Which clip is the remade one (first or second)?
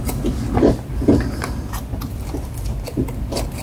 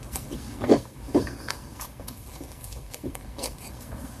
second